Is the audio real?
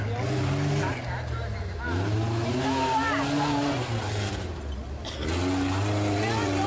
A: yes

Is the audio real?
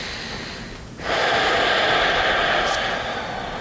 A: yes